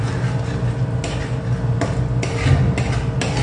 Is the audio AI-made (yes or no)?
no